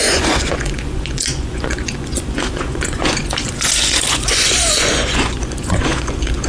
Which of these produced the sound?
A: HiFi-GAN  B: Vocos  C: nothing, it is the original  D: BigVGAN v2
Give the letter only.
B